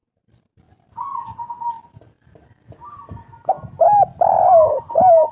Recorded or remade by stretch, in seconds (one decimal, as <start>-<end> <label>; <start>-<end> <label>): 0.0-1.5 remade; 1.5-4.3 recorded; 4.3-5.3 remade